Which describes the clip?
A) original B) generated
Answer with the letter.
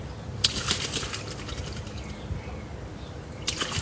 A